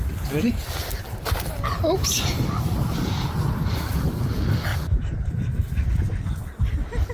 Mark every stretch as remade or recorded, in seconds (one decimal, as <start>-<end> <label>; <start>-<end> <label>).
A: 0.0-7.1 recorded